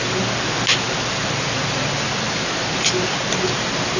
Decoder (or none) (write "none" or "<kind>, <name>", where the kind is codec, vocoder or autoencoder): none